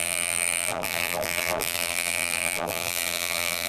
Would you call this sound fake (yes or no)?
yes